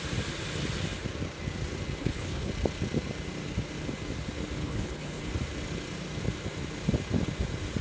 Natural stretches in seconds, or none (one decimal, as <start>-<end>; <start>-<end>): 0.0-2.0; 2.5-4.6; 5.2-7.8